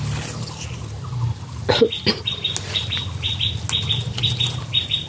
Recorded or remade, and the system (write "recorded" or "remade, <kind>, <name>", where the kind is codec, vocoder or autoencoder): recorded